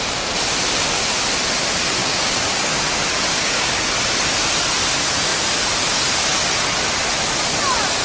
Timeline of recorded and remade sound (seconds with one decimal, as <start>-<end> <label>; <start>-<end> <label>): 0.0-2.0 recorded; 2.0-2.8 remade; 2.8-3.3 recorded; 3.3-3.9 remade; 3.9-8.0 recorded